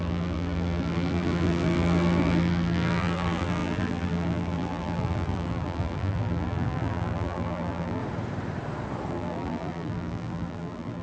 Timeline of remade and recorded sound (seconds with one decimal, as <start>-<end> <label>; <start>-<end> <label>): 0.0-8.0 remade; 8.0-9.1 recorded; 9.1-11.0 remade